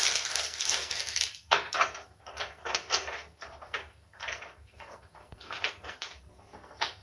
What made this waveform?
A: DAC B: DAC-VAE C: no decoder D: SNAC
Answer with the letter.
D